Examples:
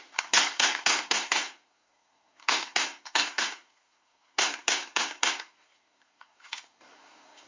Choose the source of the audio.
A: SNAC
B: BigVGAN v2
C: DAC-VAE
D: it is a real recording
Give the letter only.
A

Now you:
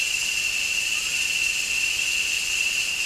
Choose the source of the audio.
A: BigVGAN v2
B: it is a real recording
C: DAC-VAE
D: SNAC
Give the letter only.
B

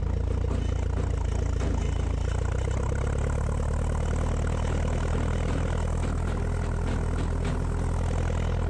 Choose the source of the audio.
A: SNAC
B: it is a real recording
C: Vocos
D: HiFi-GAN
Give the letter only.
B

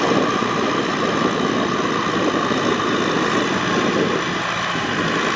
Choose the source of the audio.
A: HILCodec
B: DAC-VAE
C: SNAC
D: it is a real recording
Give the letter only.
D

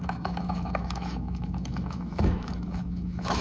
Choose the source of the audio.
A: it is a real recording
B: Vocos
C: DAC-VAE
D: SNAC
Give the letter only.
C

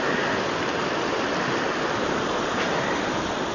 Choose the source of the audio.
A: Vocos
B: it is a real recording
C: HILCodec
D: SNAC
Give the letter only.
B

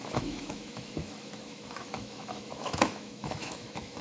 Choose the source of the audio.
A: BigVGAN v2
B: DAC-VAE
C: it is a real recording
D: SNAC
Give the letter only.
B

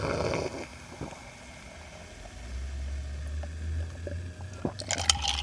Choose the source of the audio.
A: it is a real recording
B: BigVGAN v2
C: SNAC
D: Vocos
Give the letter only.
A